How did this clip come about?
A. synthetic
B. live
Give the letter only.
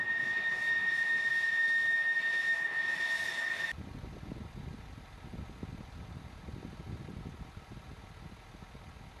B